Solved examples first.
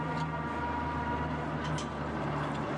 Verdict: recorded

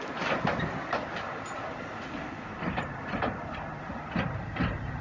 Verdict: recorded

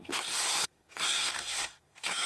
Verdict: remade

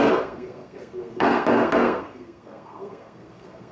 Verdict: remade